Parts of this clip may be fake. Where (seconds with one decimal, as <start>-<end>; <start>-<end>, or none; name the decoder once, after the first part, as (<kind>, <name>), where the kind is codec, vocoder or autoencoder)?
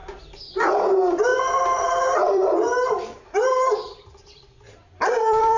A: 0.0-5.6 (vocoder, BigVGAN v2)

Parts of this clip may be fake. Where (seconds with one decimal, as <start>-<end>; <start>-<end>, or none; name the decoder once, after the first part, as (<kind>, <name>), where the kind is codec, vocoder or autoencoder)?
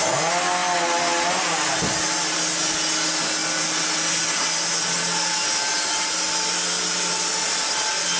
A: none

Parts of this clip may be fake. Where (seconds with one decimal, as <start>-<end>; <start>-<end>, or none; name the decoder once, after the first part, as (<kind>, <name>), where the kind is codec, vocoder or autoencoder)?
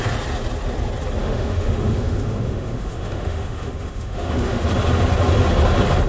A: 1.2-4.6 (autoencoder, DAC-VAE)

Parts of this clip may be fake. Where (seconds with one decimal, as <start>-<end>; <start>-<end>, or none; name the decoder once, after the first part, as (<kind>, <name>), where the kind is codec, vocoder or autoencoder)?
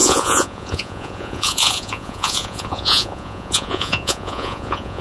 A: 0.0-5.0 (vocoder, Vocos)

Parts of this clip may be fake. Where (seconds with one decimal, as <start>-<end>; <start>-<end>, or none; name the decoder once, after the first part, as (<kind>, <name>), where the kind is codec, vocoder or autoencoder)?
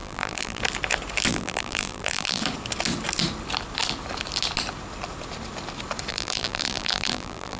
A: 0.0-0.6 (vocoder, BigVGAN v2); 1.3-2.4; 6.1-7.6